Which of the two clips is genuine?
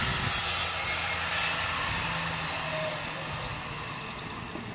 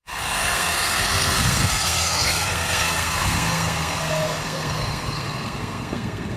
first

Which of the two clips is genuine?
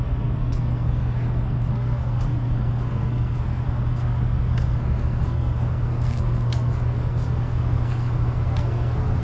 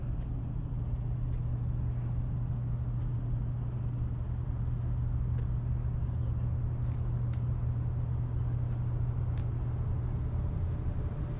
second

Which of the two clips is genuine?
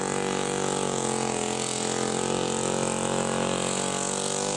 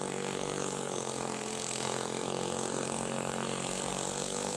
first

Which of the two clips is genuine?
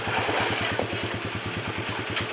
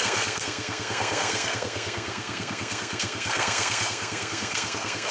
first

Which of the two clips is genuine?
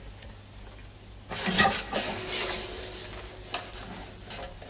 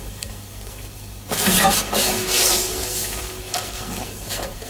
first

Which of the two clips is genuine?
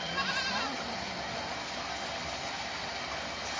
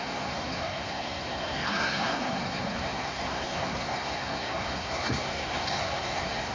first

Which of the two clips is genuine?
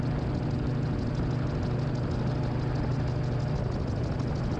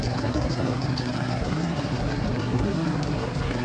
first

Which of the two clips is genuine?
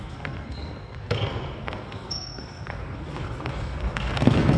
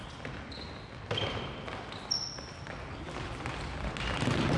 second